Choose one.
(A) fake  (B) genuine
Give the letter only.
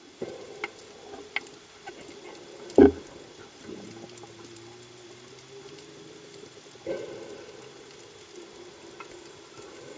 B